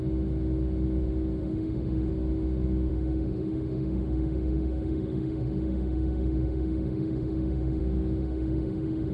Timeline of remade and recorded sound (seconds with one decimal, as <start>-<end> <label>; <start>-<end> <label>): 0.0-1.4 recorded; 1.4-2.1 remade; 2.1-2.9 recorded; 2.9-7.8 remade; 7.8-8.2 recorded; 8.2-9.1 remade